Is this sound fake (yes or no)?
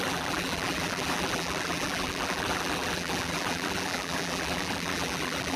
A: yes